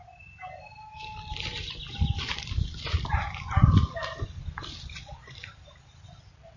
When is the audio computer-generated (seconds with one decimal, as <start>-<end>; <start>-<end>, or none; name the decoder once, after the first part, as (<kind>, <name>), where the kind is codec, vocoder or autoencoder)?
1.5-5.5 (vocoder, BigVGAN v2)